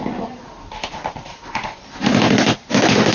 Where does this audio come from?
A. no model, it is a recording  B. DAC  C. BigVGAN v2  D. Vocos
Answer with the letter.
A